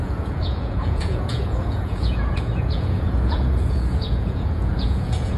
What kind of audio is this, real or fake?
fake